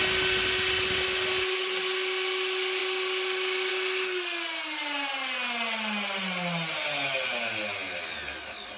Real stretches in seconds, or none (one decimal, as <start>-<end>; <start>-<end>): 0.0-8.8